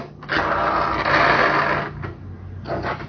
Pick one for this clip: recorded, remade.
recorded